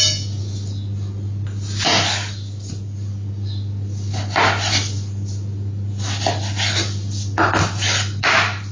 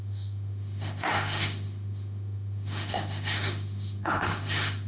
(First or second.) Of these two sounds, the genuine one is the first